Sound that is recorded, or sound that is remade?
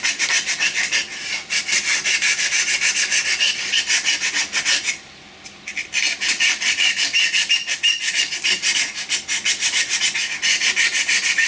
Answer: recorded